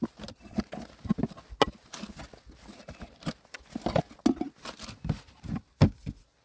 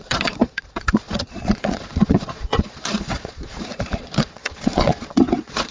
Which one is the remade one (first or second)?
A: second